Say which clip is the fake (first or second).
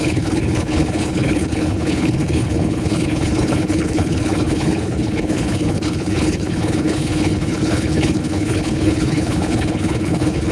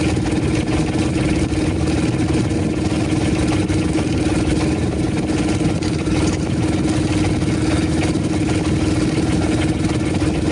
first